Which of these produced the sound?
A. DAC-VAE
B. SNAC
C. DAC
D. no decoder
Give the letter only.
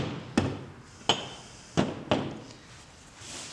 D